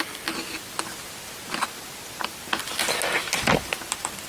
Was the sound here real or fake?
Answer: real